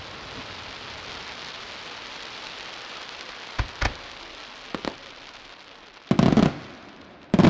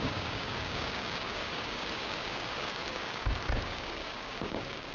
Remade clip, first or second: second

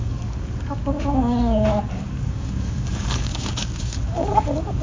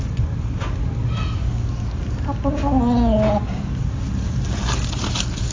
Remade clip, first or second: first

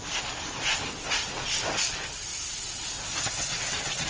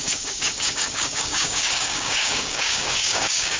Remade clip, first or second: second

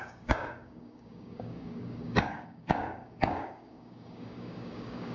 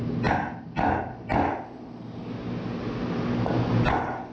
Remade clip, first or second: first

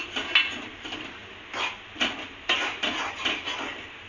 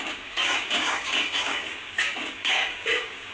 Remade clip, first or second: second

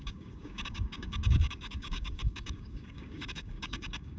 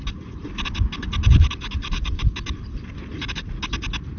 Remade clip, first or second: first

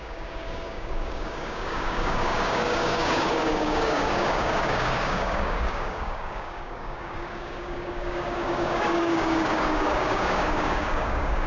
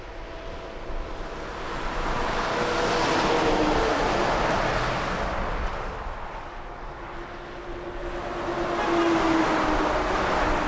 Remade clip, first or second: first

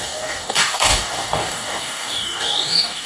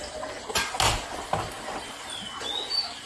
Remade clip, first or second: first